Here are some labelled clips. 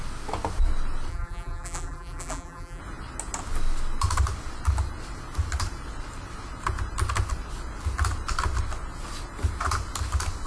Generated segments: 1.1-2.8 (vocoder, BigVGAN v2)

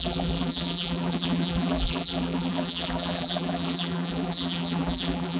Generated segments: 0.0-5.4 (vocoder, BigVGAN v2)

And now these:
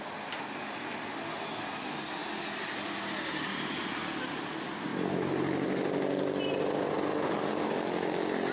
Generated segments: none

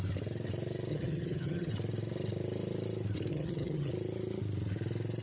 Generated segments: 0.9-1.7 (vocoder, HiFi-GAN); 3.3-3.9